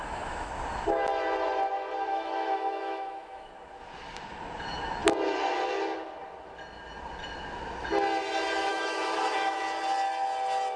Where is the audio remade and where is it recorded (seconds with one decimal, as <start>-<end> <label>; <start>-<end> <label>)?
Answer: 0.0-0.5 remade; 0.5-2.1 recorded; 2.1-3.5 remade; 3.5-8.7 recorded; 8.7-9.6 remade; 9.6-10.8 recorded